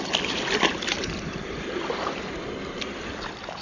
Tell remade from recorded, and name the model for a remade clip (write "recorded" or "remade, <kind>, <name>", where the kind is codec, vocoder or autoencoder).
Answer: remade, vocoder, BigVGAN v2